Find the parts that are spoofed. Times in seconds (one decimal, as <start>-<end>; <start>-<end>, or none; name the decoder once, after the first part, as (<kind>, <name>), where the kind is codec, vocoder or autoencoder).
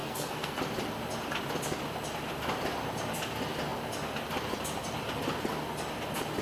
0.0-0.6 (codec, SNAC)